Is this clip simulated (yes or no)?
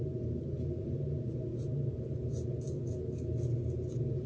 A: no